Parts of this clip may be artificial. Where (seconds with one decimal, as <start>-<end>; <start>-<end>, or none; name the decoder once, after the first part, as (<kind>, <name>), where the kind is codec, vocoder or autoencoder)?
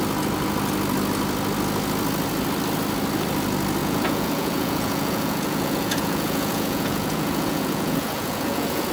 3.8-8.9 (vocoder, Vocos)